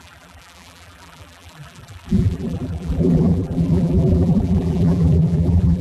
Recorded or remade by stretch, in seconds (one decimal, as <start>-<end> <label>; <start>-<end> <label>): 0.0-5.8 remade